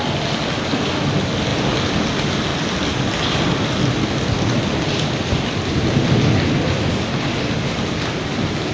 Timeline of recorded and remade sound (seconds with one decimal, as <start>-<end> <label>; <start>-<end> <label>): 0.0-8.7 recorded